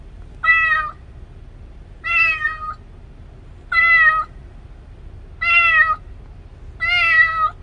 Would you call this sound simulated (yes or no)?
no